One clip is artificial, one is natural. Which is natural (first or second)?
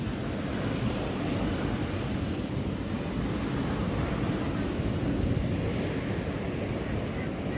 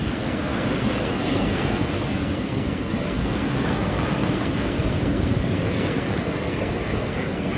first